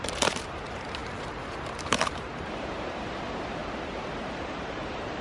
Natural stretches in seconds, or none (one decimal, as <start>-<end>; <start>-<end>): 3.6-4.2